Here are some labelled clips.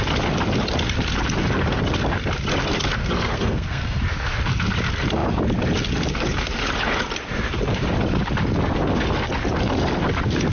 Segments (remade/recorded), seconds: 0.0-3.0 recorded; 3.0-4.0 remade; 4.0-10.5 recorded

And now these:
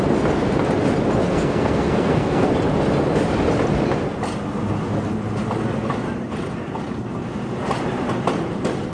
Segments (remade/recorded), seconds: 0.0-1.3 recorded; 1.3-2.5 remade; 2.5-8.9 recorded

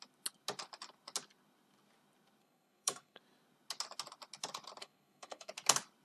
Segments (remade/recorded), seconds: 0.0-2.4 recorded; 2.4-3.2 remade; 3.2-4.8 recorded; 4.8-5.5 remade; 5.5-6.0 recorded

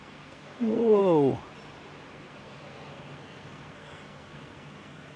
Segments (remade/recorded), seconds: 0.0-1.0 remade; 1.0-2.1 recorded; 2.1-5.2 remade

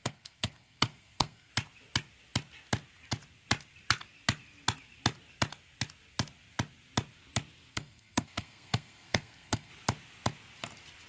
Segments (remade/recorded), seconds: 0.0-1.5 remade; 1.5-7.7 recorded; 7.7-9.7 remade; 9.7-11.1 recorded

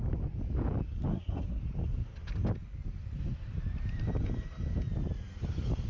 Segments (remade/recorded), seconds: 0.0-1.1 recorded; 1.1-1.6 remade; 1.6-5.9 recorded

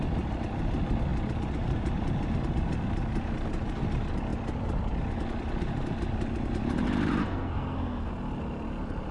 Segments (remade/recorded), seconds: 0.0-7.2 recorded; 7.2-8.1 remade; 8.1-9.1 recorded

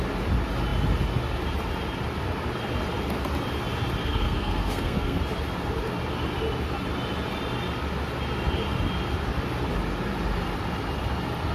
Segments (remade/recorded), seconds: 0.0-4.0 recorded; 4.0-5.2 remade; 5.2-11.5 recorded